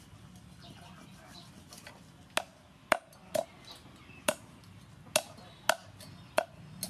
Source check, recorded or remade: recorded